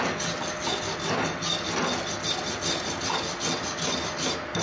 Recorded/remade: recorded